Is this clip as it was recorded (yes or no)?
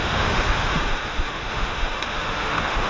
no